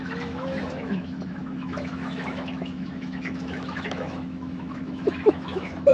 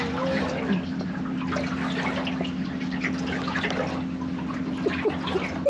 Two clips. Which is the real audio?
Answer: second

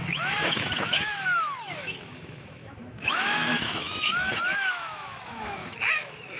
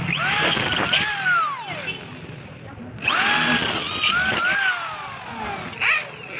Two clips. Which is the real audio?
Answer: second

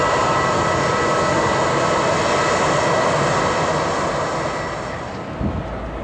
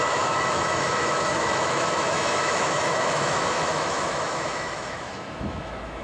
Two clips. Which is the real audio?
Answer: first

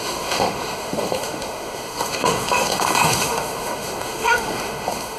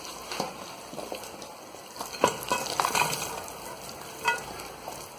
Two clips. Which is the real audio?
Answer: second